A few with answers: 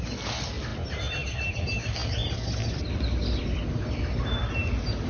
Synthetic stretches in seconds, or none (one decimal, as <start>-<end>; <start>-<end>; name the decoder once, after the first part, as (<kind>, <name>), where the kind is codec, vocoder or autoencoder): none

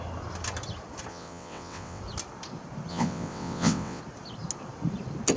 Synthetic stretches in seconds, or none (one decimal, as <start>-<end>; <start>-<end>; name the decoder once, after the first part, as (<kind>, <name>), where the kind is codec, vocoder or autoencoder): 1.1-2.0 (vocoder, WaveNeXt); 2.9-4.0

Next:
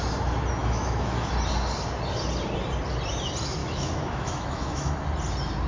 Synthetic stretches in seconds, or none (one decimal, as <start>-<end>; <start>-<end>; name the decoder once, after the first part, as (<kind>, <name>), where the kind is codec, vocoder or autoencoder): 0.6-1.3 (autoencoder, DAC-VAE); 3.6-4.9